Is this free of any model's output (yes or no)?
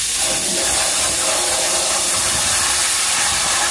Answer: yes